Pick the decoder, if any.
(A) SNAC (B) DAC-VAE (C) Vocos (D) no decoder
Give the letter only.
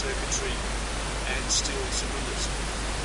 D